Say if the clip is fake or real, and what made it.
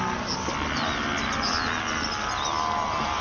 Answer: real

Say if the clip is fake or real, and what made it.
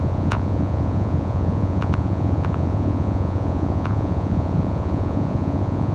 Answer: fake, vocoder, Vocos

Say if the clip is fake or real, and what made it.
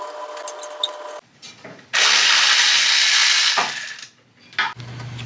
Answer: real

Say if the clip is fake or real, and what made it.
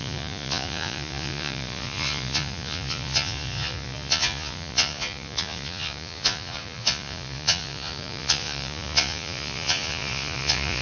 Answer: fake, vocoder, Vocos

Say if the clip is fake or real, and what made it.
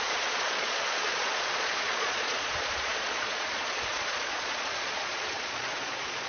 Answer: fake, vocoder, Vocos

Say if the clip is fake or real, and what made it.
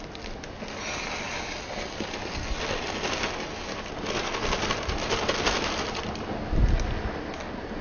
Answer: real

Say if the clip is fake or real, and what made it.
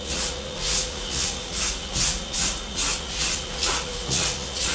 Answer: fake, vocoder, Vocos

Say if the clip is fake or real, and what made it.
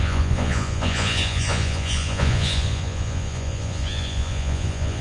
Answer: fake, vocoder, Vocos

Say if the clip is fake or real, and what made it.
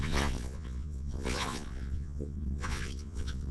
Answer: fake, vocoder, Vocos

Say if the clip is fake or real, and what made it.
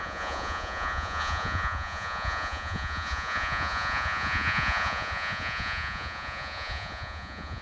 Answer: fake, vocoder, Vocos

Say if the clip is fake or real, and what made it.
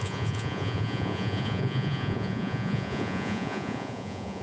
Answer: fake, vocoder, Vocos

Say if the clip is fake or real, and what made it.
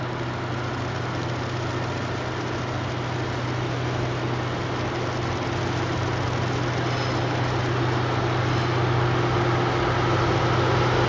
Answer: real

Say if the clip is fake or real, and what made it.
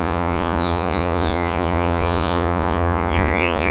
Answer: fake, vocoder, Vocos